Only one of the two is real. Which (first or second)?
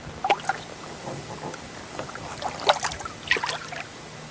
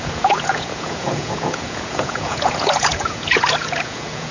first